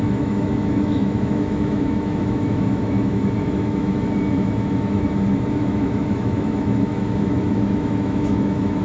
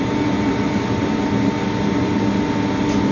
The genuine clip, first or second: second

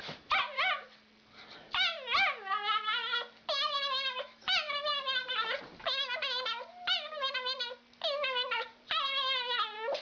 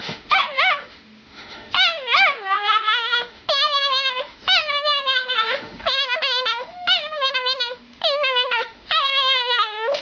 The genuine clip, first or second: first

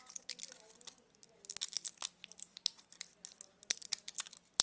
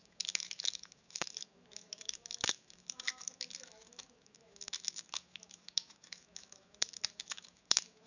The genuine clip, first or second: first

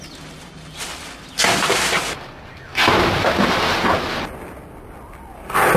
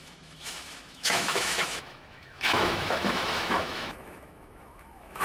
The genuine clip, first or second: first